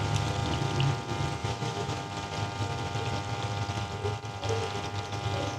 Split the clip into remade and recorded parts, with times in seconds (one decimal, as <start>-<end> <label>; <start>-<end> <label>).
0.0-1.4 recorded; 1.4-2.0 remade; 2.0-5.6 recorded